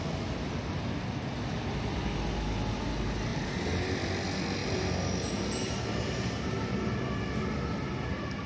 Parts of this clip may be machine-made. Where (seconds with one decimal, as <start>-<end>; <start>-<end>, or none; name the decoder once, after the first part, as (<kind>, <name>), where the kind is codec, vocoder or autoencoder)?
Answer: 3.3-3.9 (vocoder, BigVGAN v2); 4.6-6.7